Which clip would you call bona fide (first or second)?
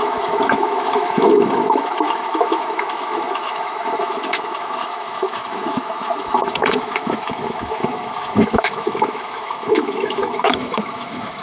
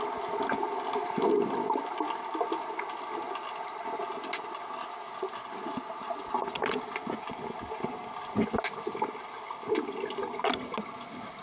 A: second